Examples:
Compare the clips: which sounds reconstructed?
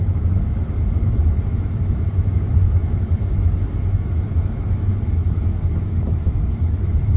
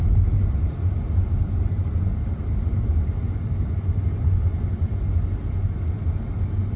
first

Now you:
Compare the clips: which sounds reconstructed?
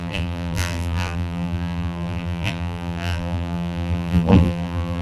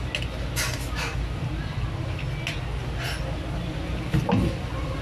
first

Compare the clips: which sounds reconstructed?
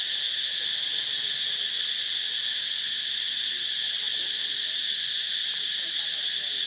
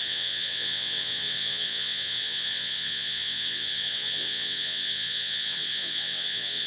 second